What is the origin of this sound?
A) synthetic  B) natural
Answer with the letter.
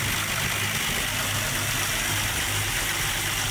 B